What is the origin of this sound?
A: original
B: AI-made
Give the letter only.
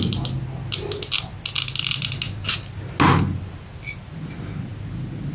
A